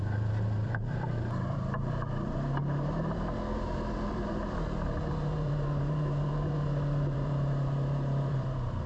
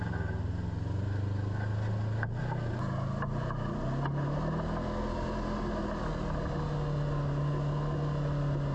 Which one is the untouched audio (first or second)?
second